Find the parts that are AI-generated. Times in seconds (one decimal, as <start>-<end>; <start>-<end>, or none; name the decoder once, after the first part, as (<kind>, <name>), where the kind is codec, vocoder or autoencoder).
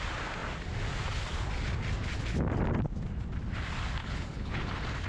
4.0-4.6 (codec, HILCodec)